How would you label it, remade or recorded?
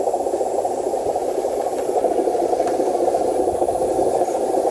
recorded